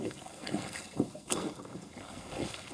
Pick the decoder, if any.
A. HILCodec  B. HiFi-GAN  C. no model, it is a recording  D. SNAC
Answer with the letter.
D